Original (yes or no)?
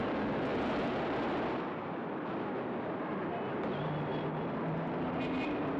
yes